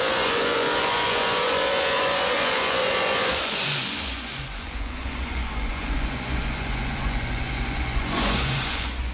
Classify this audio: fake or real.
fake